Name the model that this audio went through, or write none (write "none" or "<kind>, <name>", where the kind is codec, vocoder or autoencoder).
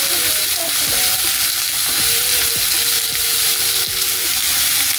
none